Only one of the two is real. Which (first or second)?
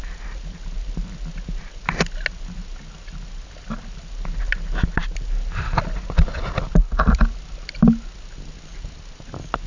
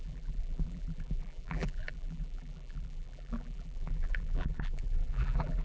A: first